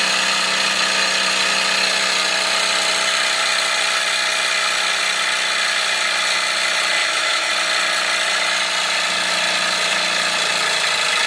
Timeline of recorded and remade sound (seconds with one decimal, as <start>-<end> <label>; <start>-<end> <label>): 0.0-7.0 recorded; 7.0-7.5 remade; 7.5-11.3 recorded